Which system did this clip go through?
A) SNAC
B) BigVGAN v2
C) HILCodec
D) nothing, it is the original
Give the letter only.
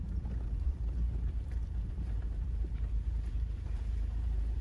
B